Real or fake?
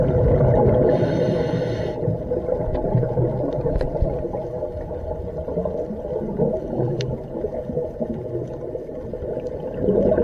real